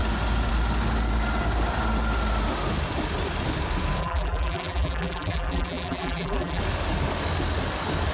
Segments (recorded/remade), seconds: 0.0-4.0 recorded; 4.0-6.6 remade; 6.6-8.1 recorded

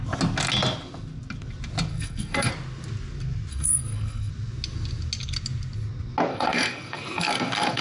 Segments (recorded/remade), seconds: 0.0-1.9 recorded; 1.9-2.5 remade; 2.5-3.5 recorded; 3.5-4.3 remade; 4.3-6.3 recorded; 6.3-7.8 remade

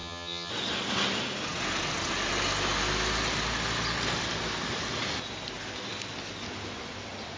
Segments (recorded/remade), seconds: 0.0-0.5 remade; 0.5-7.4 recorded

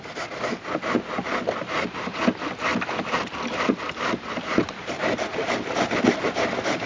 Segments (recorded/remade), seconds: 0.0-2.7 recorded; 2.7-6.9 remade

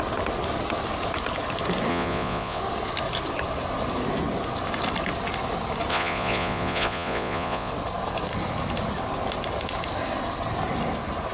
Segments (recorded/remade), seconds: 0.0-1.9 recorded; 1.9-2.6 remade; 2.6-5.9 recorded; 5.9-7.7 remade; 7.7-11.3 recorded

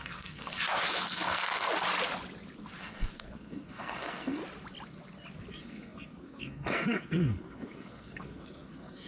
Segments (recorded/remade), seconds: 0.0-1.7 remade; 1.7-2.8 recorded; 2.8-4.4 remade; 4.4-5.5 recorded; 5.5-9.1 remade

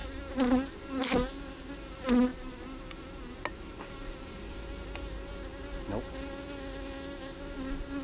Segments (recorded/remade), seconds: 0.0-8.0 recorded